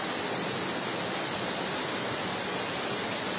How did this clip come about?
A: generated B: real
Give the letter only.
B